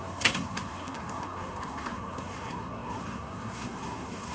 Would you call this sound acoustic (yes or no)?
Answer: no